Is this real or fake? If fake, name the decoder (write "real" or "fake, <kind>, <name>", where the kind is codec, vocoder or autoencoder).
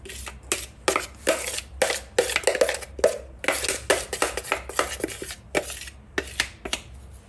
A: real